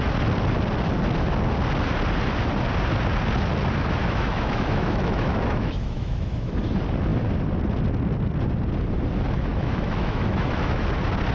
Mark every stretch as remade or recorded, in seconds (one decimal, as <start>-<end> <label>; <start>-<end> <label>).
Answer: 0.0-4.0 recorded; 4.0-6.5 remade; 6.5-9.5 recorded; 9.5-10.8 remade; 10.8-11.3 recorded